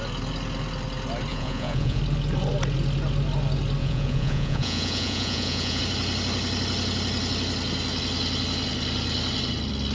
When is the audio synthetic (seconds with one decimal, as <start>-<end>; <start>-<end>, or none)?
1.3-2.0; 3.8-5.8